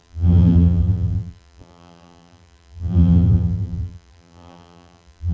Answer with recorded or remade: remade